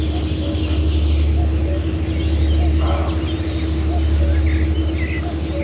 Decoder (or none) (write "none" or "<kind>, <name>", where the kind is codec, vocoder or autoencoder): none